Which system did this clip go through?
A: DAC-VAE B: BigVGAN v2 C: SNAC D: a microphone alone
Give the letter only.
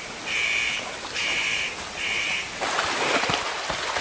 D